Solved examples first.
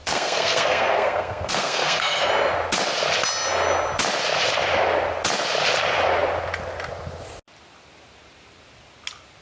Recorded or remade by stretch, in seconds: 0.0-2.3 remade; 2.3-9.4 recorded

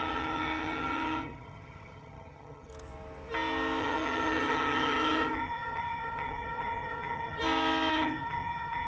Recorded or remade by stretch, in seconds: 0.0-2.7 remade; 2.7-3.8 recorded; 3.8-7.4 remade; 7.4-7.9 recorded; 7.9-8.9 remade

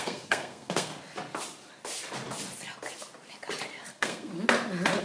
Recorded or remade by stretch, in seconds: 0.0-0.9 remade; 0.9-3.9 recorded; 3.9-4.3 remade; 4.3-5.0 recorded